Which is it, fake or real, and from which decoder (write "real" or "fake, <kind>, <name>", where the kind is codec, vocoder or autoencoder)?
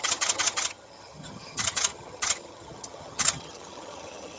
fake, vocoder, HiFi-GAN